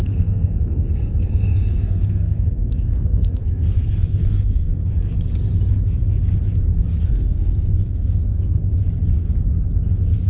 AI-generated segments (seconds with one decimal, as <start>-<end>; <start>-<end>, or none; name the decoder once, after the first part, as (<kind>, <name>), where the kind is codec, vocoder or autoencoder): 0.0-4.7 (codec, SNAC); 7.0-8.6